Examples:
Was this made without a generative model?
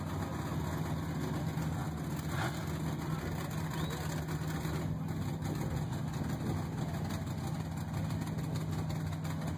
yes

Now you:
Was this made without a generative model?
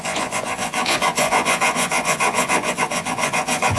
no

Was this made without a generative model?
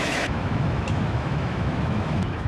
no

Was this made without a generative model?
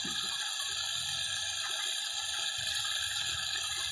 yes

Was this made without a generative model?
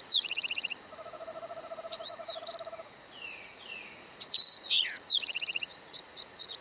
no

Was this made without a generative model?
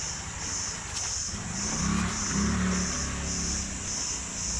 yes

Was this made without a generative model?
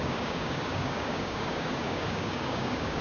no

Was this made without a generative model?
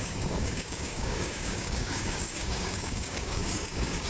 no